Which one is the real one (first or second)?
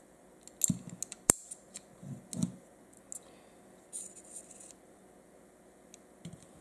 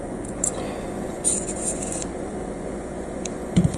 first